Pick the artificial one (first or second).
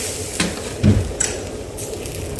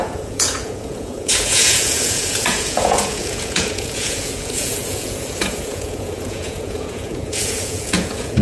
second